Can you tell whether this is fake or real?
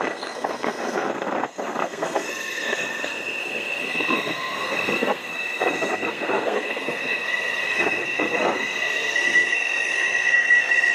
fake